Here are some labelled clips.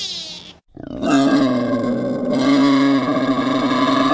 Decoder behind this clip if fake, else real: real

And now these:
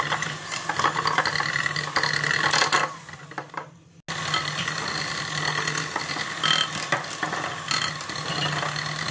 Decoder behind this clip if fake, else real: real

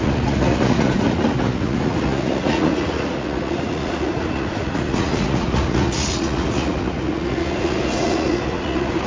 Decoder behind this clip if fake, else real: fake, vocoder, Vocos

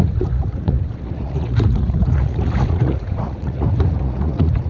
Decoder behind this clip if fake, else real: fake, vocoder, Vocos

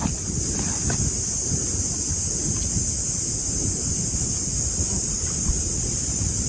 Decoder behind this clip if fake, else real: real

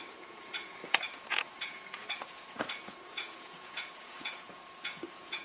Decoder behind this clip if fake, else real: fake, vocoder, Vocos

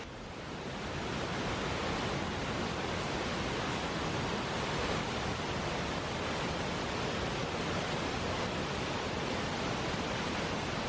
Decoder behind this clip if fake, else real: real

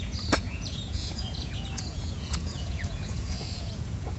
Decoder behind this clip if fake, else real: fake, vocoder, Vocos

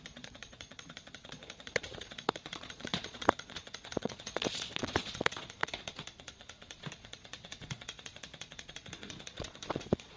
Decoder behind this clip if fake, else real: fake, vocoder, Vocos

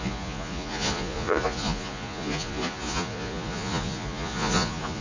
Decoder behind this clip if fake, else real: fake, vocoder, Vocos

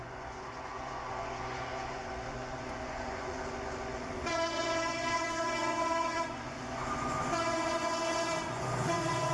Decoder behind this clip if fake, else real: fake, vocoder, Vocos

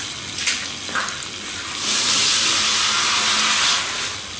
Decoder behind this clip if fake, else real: real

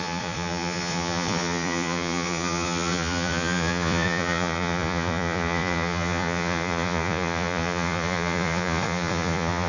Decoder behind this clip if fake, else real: fake, vocoder, Vocos